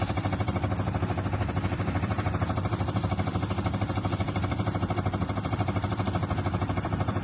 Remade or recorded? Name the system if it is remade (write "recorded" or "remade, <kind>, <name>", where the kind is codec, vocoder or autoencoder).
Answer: remade, vocoder, BigVGAN v2